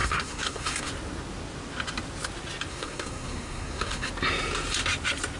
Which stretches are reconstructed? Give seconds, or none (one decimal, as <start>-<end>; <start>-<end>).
0.0-0.9; 2.7-4.1